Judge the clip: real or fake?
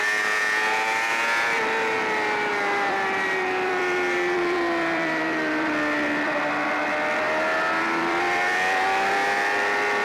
fake